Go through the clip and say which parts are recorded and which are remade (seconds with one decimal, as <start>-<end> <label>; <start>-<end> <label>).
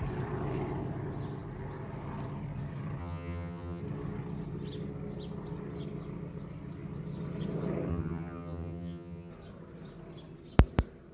0.0-3.0 recorded; 3.0-3.8 remade; 3.8-7.9 recorded; 7.9-9.3 remade; 9.3-11.1 recorded